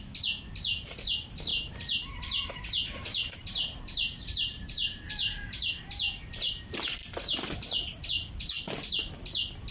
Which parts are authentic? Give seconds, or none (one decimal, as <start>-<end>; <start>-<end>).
0.0-1.5; 5.9-9.7